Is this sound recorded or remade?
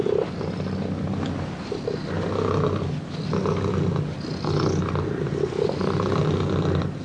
recorded